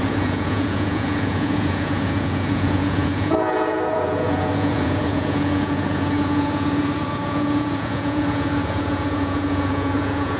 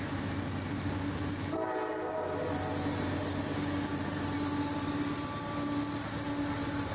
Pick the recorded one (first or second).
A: second